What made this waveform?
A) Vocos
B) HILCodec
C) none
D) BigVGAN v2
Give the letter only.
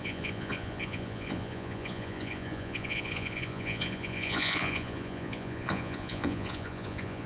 A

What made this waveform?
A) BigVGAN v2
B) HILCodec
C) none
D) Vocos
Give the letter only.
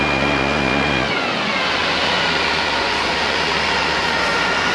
D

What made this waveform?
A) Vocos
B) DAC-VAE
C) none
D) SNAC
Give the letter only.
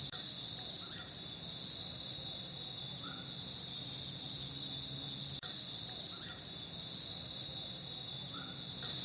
C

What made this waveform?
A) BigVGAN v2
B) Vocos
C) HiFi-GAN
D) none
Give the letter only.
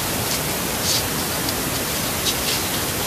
D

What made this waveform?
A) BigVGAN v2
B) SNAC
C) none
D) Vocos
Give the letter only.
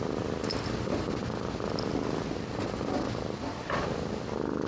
C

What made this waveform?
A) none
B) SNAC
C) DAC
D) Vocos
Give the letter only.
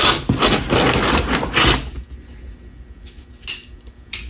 A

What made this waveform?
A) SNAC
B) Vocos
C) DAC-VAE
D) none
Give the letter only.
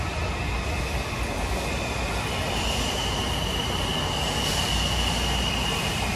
D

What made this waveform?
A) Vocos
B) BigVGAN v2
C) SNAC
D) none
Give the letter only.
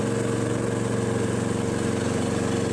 D